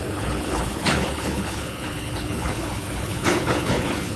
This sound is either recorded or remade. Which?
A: remade